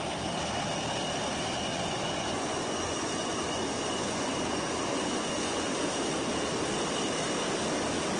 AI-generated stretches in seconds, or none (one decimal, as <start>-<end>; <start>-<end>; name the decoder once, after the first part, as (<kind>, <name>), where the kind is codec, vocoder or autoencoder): 1.7-5.9 (vocoder, Vocos)